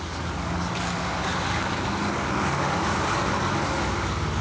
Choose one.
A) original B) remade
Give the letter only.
B